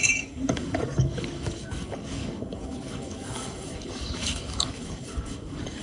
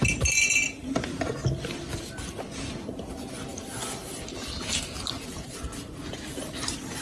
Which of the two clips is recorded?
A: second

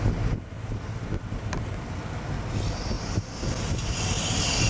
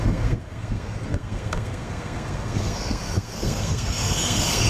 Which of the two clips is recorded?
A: first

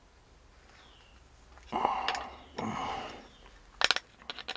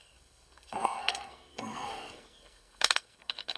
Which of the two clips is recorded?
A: first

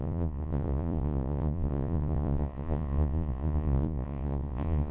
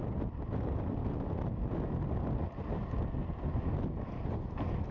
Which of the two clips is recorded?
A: second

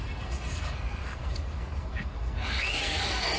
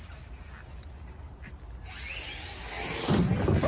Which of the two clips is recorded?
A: second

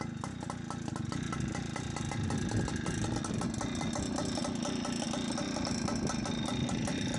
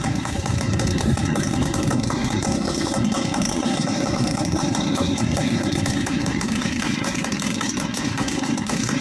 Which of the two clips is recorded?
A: first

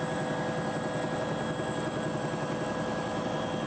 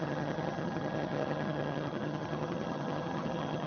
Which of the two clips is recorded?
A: first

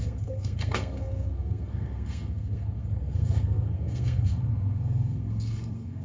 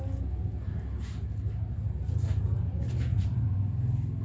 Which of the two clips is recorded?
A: second